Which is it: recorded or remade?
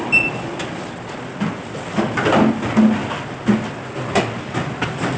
recorded